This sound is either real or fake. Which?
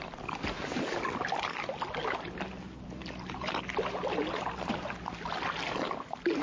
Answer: real